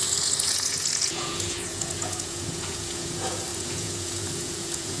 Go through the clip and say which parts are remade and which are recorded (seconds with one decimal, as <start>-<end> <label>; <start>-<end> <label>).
0.0-5.0 remade